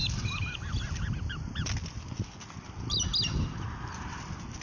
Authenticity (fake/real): real